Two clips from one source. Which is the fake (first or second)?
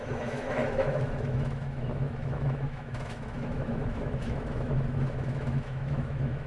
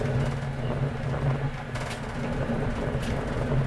first